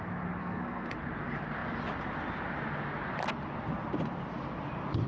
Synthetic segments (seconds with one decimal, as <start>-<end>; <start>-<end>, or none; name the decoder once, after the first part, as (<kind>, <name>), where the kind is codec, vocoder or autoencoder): 0.4-0.9 (codec, SNAC)